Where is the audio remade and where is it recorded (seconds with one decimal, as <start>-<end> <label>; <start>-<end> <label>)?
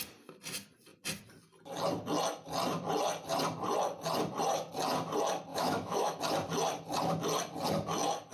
0.0-5.5 recorded; 5.5-6.2 remade; 6.2-8.3 recorded